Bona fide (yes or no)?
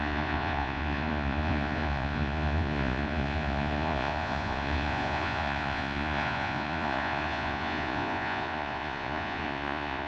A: no